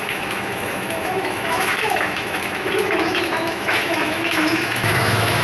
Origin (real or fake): fake